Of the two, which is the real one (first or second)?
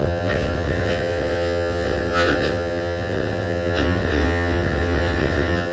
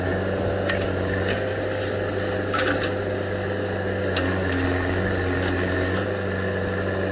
second